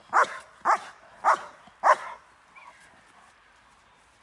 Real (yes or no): yes